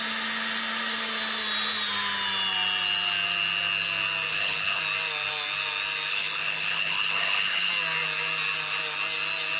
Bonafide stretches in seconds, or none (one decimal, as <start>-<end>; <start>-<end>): 0.0-4.3; 4.8-6.1; 7.7-9.6